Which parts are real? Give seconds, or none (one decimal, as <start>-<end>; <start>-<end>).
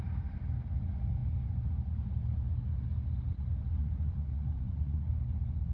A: 0.0-3.8; 5.1-5.7